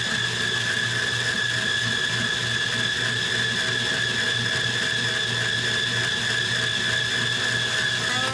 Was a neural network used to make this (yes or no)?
no